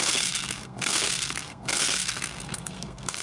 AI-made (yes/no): yes